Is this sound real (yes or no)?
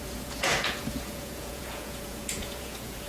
no